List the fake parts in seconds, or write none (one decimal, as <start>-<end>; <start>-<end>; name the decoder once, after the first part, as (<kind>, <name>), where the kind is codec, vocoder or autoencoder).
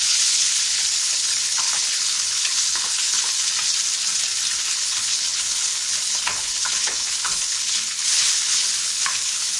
0.0-3.5 (codec, HILCodec); 4.7-9.6